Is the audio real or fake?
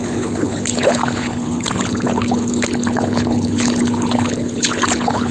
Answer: fake